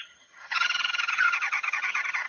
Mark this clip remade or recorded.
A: remade